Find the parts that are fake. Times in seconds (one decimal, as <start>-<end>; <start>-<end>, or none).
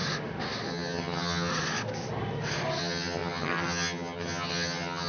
0.7-1.5; 2.8-5.1